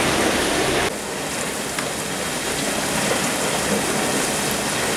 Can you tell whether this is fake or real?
real